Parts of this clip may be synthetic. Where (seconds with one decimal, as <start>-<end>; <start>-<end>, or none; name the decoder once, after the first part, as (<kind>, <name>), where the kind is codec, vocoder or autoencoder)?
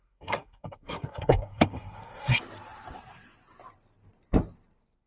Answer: 0.0-2.4 (codec, SNAC)